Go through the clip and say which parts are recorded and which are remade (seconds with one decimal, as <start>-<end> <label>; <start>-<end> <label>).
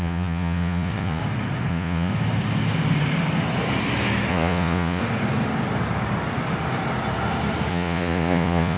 0.0-1.2 remade; 1.2-1.7 recorded; 1.7-2.1 remade; 2.1-4.3 recorded; 4.3-5.0 remade; 5.0-7.7 recorded; 7.7-8.8 remade